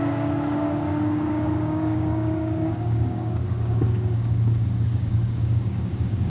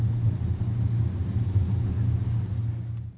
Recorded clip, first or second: second